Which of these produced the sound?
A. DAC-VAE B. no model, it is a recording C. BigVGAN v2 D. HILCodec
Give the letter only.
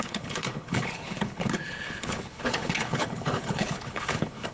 D